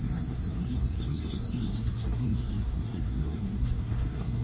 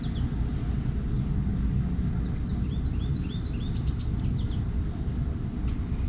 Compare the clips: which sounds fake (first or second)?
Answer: first